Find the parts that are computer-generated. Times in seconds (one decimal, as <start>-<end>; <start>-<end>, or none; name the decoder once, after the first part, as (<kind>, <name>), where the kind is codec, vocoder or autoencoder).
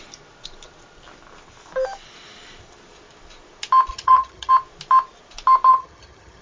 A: 3.9-4.5 (vocoder, HiFi-GAN); 5.7-6.4